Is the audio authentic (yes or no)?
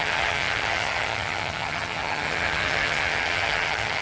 no